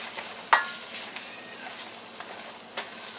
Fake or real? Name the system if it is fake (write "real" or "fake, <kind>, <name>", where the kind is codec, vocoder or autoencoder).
real